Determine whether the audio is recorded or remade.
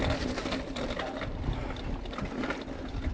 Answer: recorded